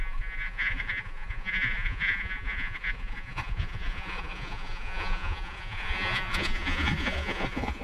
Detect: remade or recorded remade